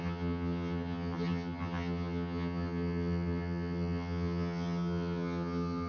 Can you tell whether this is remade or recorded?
remade